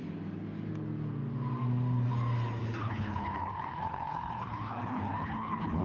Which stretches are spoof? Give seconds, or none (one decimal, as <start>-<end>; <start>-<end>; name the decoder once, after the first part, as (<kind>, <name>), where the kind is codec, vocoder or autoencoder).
2.6-5.8 (codec, HILCodec)